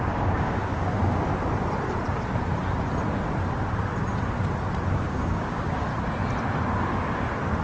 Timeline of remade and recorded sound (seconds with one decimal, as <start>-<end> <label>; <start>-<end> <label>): 0.0-1.3 remade; 1.3-4.8 recorded; 4.8-5.9 remade; 5.9-7.6 recorded